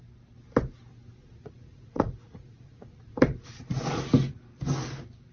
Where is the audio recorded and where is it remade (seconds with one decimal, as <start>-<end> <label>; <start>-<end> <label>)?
0.0-1.2 recorded; 1.2-4.0 remade; 4.0-5.3 recorded

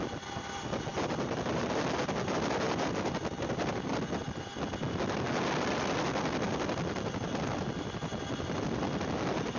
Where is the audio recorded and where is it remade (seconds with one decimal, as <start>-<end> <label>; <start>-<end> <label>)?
0.0-9.6 recorded